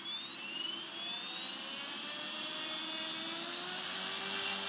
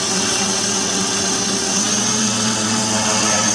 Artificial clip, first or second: second